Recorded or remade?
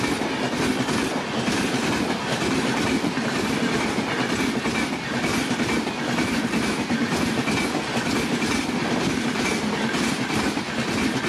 recorded